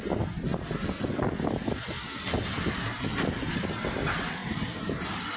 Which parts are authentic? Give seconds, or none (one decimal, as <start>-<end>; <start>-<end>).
0.0-5.4